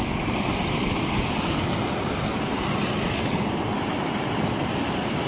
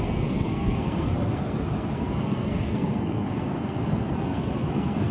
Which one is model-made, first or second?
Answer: second